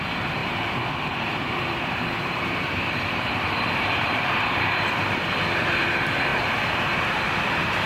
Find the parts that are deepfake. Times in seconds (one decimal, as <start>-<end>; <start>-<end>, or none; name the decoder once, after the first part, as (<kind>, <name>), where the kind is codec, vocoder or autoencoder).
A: 0.4-4.9 (vocoder, BigVGAN v2); 6.3-7.2